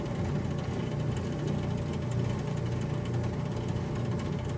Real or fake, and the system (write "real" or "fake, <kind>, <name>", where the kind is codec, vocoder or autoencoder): real